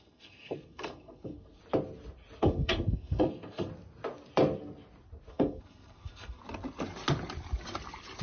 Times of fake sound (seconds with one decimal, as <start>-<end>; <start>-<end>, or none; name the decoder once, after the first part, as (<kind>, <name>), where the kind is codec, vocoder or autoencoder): 0.0-1.6 (codec, SNAC); 2.4-3.7; 5.3-6.4

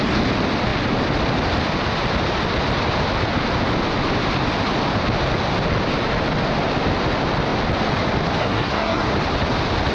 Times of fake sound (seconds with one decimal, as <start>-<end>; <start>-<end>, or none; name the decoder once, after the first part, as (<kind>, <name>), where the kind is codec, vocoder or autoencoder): 8.4-9.1 (codec, SNAC)

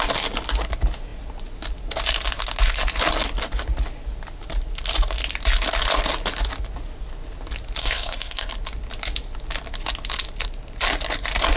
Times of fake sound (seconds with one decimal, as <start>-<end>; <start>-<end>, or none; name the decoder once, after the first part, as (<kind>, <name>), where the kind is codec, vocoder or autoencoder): 7.8-8.5 (codec, SNAC)

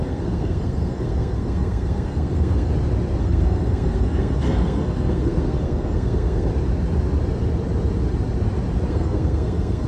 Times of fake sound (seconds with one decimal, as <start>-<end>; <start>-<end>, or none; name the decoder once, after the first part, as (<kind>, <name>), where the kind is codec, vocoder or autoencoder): 0.0-2.7 (codec, SNAC); 3.2-6.5; 8.9-9.9

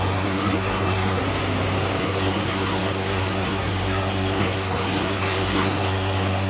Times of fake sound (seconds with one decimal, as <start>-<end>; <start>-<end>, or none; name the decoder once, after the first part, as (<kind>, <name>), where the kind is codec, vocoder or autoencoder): 0.0-1.2 (codec, SNAC); 2.0-6.5

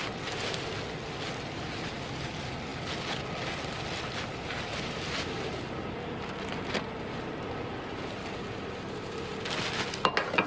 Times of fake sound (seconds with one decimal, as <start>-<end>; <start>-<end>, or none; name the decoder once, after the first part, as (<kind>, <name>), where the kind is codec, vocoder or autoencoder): none